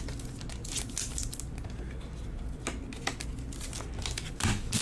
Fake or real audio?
real